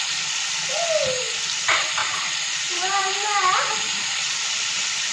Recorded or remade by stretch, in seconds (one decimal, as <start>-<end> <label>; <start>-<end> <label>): 0.0-2.0 recorded; 2.0-5.1 remade